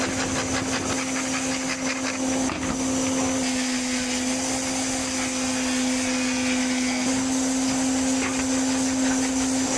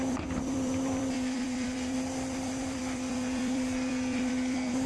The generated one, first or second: second